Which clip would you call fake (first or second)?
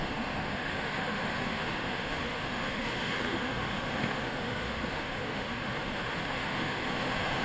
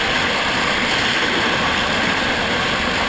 first